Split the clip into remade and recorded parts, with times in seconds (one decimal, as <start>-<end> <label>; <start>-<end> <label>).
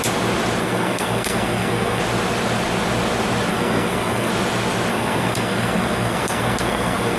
0.0-0.6 recorded; 0.6-2.0 remade; 2.0-3.5 recorded; 3.5-4.3 remade; 4.3-4.9 recorded; 4.9-7.2 remade